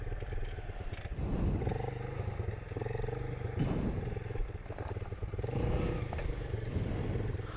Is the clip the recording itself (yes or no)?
yes